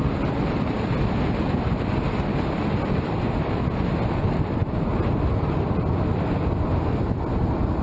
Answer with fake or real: real